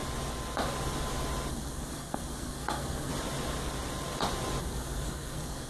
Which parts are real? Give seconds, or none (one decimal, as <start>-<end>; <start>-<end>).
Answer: 0.0-1.5; 3.1-4.6